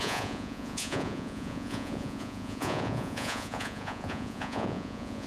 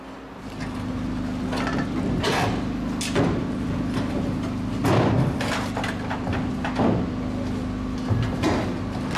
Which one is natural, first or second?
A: second